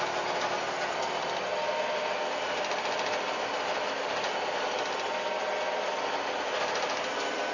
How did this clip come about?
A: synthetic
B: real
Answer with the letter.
B